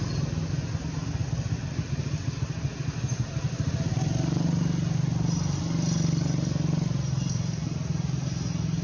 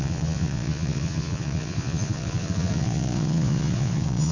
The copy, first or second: second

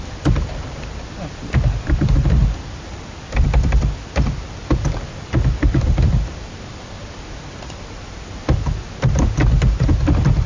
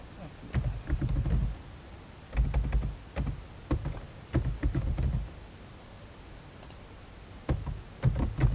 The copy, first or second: first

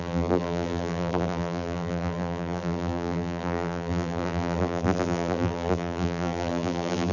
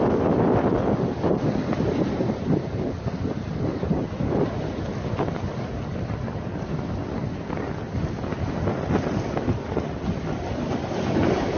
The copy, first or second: first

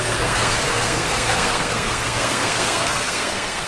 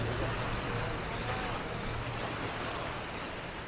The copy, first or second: first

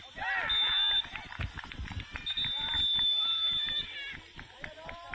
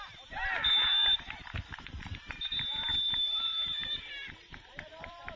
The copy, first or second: second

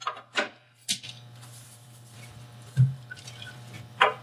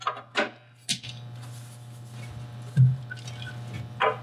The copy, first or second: first